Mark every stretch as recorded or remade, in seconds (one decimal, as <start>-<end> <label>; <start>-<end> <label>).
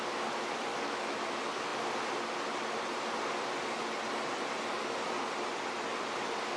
0.0-0.7 recorded; 0.7-1.2 remade; 1.2-6.6 recorded